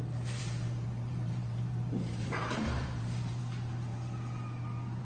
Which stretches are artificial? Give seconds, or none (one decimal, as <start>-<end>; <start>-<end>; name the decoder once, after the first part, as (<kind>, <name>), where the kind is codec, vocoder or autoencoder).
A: 0.4-3.4 (vocoder, BigVGAN v2)